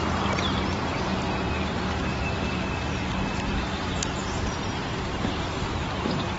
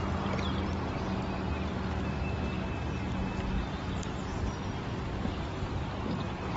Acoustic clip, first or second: second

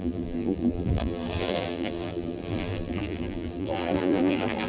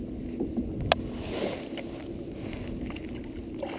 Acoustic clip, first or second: second